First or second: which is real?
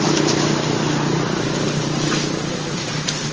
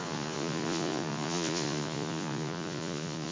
first